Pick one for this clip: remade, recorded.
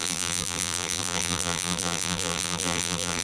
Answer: remade